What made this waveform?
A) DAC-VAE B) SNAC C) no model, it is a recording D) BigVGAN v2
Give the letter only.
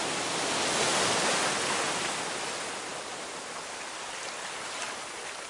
C